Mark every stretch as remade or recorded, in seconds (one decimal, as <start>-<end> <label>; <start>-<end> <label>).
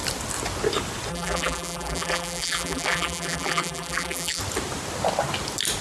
0.0-1.1 recorded; 1.1-4.4 remade; 4.4-5.8 recorded